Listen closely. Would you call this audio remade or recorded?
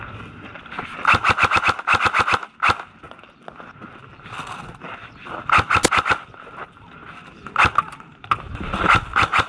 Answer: recorded